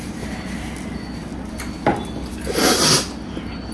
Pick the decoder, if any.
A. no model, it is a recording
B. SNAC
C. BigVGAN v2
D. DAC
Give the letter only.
A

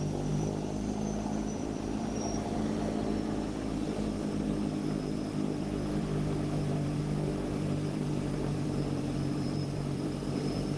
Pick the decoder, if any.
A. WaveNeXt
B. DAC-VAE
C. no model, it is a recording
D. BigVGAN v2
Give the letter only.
D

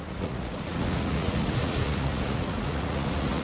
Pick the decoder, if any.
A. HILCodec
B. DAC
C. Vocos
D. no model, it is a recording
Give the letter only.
C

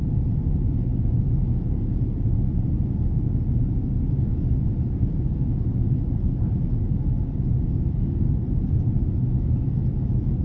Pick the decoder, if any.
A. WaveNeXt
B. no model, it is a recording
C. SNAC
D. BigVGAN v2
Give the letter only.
B